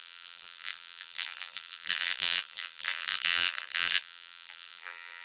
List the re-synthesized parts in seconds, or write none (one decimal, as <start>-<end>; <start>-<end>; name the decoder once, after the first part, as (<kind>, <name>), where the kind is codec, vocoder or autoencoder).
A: 0.0-5.2 (vocoder, BigVGAN v2)